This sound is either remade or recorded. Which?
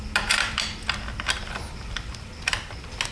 recorded